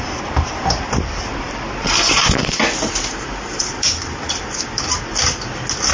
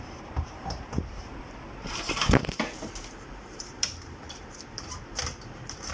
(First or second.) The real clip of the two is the first